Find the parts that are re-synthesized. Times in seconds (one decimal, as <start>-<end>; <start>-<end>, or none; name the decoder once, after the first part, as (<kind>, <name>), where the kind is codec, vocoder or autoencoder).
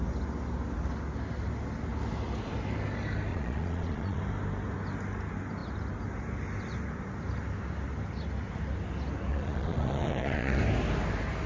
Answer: 3.3-4.2 (vocoder, Vocos); 9.3-10.6